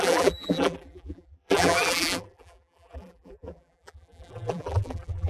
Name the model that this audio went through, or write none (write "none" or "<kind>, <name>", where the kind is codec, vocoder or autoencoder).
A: vocoder, BigVGAN v2